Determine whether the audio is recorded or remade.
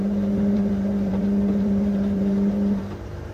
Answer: remade